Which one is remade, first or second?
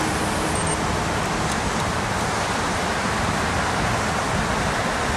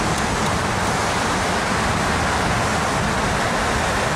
first